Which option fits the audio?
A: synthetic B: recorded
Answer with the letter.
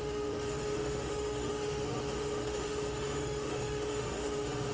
A